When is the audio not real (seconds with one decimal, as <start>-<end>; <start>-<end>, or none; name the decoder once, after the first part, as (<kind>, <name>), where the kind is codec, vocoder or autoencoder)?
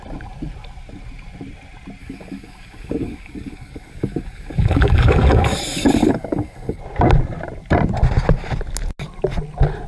2.0-6.8 (codec, DAC)